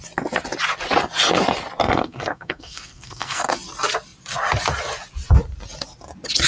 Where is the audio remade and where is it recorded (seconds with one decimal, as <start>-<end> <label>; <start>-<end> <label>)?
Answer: 0.0-1.8 recorded; 1.8-3.5 remade; 3.5-6.5 recorded

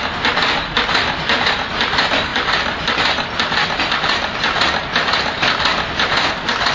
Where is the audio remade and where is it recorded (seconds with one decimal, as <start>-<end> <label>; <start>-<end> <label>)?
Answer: 0.0-6.7 recorded

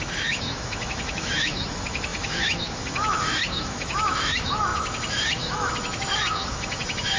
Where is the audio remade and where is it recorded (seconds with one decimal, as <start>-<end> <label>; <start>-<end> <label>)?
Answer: 0.0-7.2 remade

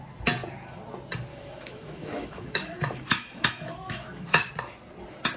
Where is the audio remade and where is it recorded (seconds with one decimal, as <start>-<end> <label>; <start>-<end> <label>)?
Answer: 0.0-1.3 recorded; 1.3-4.5 remade; 4.5-5.4 recorded

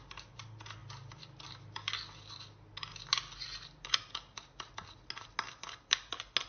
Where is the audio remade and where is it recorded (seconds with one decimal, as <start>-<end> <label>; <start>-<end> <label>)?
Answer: 0.0-6.5 recorded

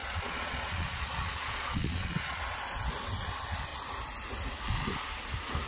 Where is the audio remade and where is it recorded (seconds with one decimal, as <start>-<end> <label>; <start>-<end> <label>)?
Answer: 0.0-2.4 remade; 2.4-5.7 recorded

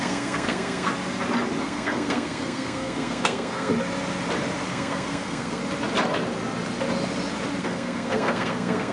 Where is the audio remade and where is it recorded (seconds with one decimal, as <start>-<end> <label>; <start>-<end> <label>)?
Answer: 0.0-0.9 remade; 0.9-1.6 recorded; 1.6-3.7 remade; 3.7-4.7 recorded; 4.7-5.6 remade; 5.6-7.6 recorded; 7.6-8.9 remade